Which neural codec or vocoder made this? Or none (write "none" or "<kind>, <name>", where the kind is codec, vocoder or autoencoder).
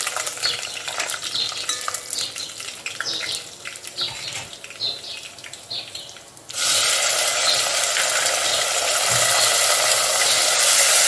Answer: none